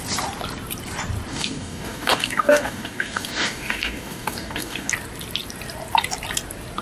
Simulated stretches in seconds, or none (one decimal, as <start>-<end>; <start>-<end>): 1.3-4.9